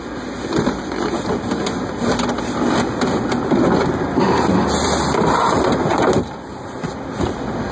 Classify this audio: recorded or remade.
remade